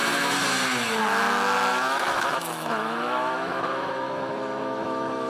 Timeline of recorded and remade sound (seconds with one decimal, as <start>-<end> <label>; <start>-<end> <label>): 0.0-1.7 recorded; 1.7-5.3 remade